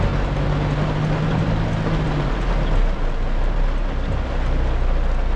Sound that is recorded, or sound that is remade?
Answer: recorded